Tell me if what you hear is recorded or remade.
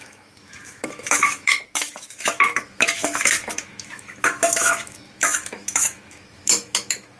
remade